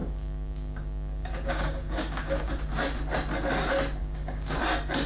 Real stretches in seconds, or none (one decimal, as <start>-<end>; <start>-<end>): 2.5-4.0; 4.6-5.1